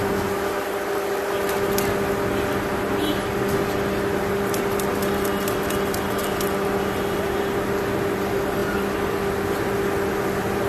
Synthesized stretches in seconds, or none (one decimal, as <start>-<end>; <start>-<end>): none